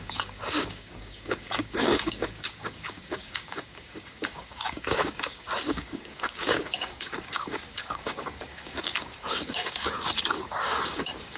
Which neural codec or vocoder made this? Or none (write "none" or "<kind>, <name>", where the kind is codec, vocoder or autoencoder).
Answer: codec, DAC